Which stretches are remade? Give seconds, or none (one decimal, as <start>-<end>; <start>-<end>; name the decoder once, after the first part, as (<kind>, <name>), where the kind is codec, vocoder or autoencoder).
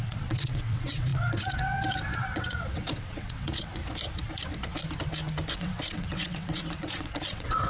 0.0-3.8 (vocoder, WaveNeXt); 5.5-7.7